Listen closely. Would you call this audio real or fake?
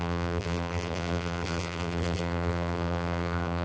fake